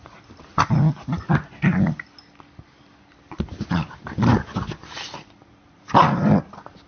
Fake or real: real